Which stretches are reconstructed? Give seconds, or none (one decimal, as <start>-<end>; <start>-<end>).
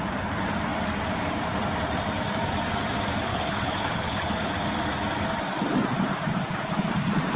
3.3-4.5